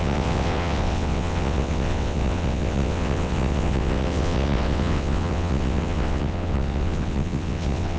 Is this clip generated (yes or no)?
yes